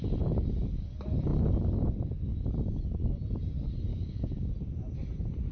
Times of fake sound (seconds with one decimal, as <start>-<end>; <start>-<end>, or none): 3.9-4.5

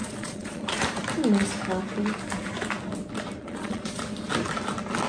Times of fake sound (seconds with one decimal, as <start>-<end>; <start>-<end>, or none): 0.0-0.8; 3.4-4.0

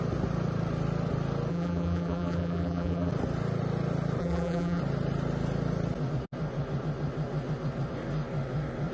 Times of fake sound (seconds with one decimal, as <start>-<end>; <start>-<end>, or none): 1.5-3.1; 4.2-4.8